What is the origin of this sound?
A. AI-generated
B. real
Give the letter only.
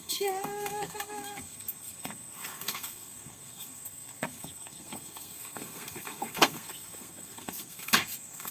A